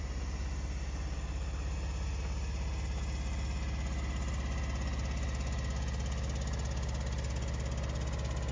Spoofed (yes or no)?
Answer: no